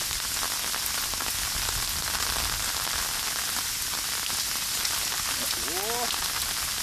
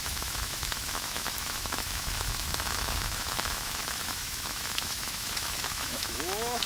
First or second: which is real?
first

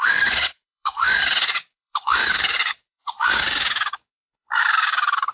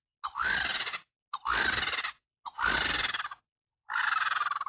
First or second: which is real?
second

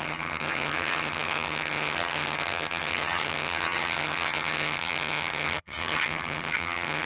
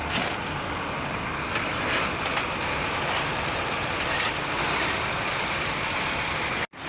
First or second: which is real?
second